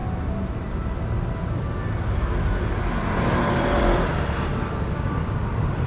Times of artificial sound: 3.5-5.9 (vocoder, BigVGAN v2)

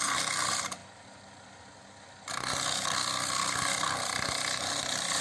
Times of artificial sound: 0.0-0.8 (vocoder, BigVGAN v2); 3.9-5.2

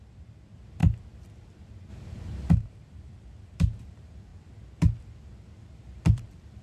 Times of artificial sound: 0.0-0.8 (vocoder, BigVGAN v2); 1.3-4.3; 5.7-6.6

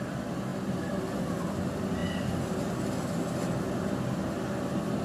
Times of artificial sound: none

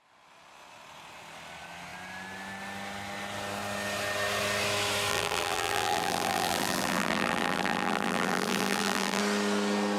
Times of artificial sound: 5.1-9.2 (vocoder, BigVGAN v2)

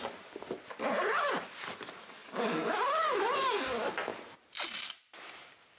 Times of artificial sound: 4.1-5.0 (vocoder, BigVGAN v2)